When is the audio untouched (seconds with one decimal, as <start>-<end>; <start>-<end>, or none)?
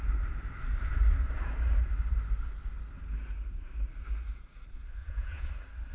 0.0-5.0; 5.5-5.9